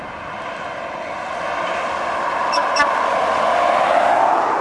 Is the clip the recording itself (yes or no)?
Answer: yes